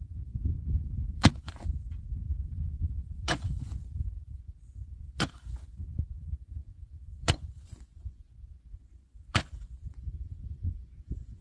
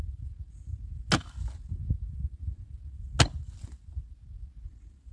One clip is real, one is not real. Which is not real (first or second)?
first